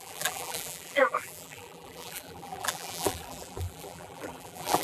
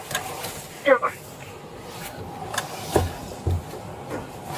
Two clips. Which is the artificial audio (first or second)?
first